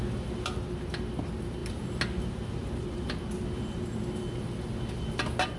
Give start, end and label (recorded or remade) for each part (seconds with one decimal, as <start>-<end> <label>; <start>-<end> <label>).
0.0-5.6 recorded